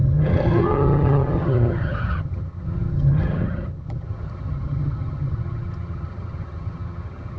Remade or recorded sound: remade